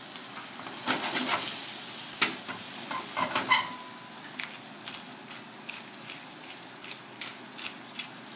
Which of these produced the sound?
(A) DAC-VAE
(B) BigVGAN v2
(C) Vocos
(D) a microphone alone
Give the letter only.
D